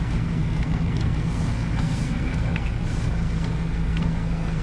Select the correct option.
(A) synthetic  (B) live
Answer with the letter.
A